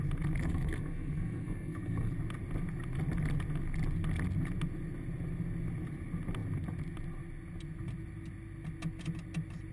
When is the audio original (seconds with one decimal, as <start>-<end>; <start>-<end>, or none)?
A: 0.0-0.4; 2.1-9.7